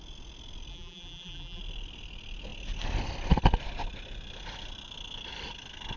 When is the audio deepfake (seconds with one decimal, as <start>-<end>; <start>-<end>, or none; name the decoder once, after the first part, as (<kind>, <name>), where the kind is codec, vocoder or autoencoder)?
0.7-1.6 (vocoder, BigVGAN v2)